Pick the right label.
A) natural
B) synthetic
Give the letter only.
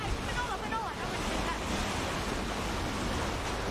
A